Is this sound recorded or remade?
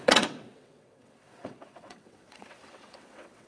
remade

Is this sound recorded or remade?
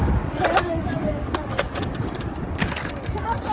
remade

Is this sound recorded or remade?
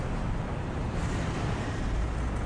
recorded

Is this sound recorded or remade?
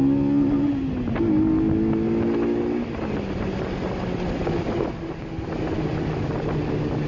recorded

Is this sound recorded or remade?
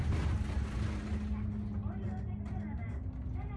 recorded